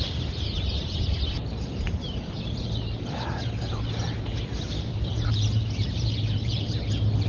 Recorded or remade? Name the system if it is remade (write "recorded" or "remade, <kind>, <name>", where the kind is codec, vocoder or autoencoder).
remade, vocoder, BigVGAN v2